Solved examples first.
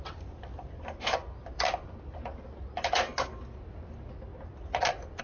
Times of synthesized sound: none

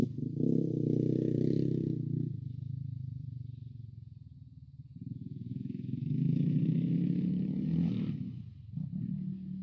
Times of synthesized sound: 5.2-8.4 (autoencoder, DAC-VAE)

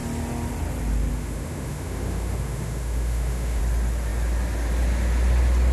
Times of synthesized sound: 1.1-3.6 (autoencoder, DAC-VAE)

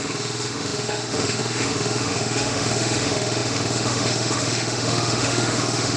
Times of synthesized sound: 0.0-6.0 (autoencoder, DAC-VAE)

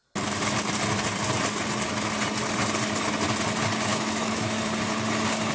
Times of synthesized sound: 3.9-4.6 (autoencoder, DAC-VAE)

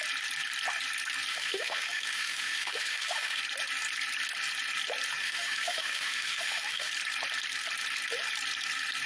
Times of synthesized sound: 1.3-3.4 (autoencoder, DAC-VAE); 5.2-6.9